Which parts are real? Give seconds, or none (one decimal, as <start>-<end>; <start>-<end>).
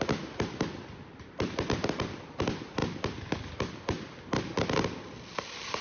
0.0-5.8